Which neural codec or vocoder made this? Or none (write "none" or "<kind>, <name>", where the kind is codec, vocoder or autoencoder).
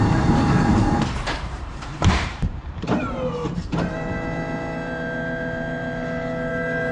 vocoder, BigVGAN v2